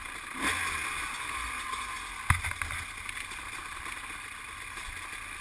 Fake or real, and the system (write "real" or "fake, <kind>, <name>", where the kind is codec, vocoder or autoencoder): real